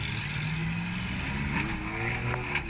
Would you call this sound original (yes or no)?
yes